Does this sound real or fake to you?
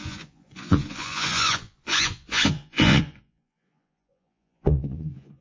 fake